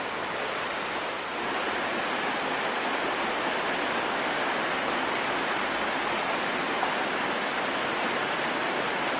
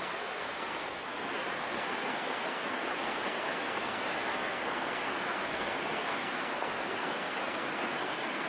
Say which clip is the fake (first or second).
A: second